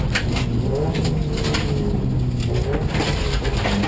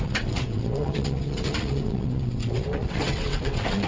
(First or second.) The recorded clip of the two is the first